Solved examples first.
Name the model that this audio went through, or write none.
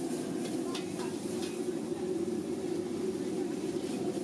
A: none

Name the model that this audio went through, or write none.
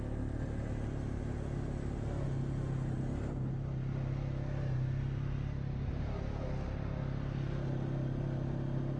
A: none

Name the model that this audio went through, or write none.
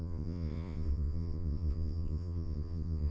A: vocoder, Vocos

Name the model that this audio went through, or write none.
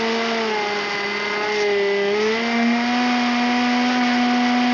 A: none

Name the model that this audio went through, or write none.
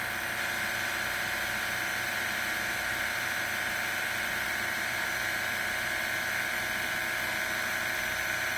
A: none